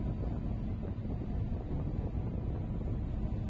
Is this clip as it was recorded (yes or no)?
yes